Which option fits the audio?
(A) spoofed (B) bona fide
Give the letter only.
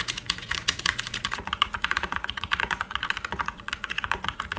A